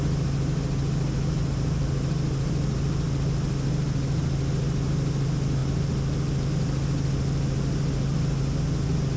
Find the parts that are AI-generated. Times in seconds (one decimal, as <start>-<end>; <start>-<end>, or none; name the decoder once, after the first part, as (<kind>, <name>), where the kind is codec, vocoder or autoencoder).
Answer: none